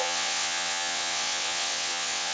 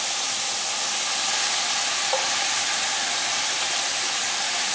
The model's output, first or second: first